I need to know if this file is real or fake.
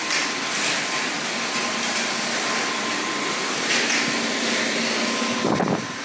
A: real